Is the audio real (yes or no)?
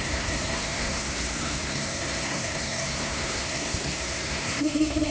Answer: no